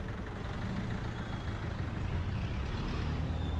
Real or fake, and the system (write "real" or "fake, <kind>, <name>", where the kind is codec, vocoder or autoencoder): real